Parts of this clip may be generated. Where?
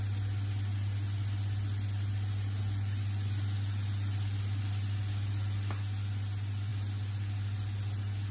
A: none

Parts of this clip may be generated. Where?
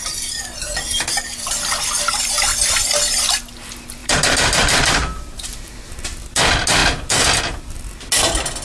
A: 4.0-5.8 (vocoder, BigVGAN v2)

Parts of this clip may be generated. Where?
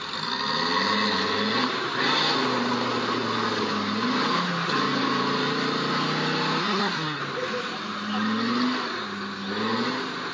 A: 6.6-7.2 (codec, SNAC)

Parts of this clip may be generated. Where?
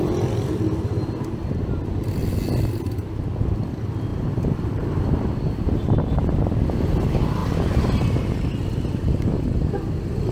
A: 4.1-6.0 (vocoder, BigVGAN v2); 7.4-8.0; 8.6-9.4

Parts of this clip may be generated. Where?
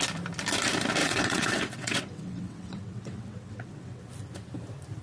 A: 1.0-4.0 (vocoder, WaveNeXt)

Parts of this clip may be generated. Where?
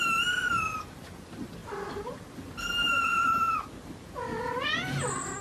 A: none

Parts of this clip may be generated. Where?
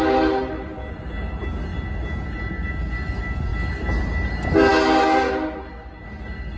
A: none